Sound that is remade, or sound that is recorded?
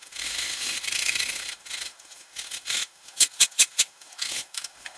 remade